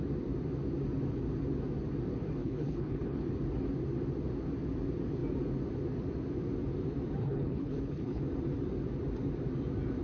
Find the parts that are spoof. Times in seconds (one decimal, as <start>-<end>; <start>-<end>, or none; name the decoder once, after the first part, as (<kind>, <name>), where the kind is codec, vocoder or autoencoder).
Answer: 2.4-3.3 (codec, HILCodec); 7.2-8.2